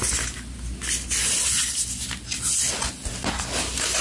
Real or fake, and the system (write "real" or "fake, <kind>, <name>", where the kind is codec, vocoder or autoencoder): real